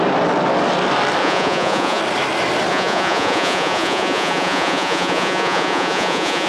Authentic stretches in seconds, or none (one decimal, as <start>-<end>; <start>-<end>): 0.0-1.2; 2.0-2.7